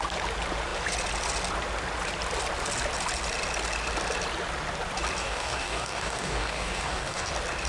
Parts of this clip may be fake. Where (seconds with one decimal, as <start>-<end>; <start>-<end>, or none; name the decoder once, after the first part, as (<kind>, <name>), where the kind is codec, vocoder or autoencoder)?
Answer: 5.2-7.3 (codec, DAC)